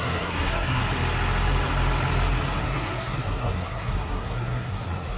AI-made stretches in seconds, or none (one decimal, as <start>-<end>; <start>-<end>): 0.0-0.8; 2.6-5.2